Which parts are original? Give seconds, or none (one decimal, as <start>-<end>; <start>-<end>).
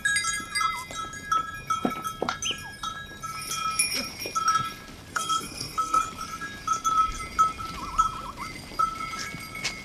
0.0-5.1; 6.0-9.8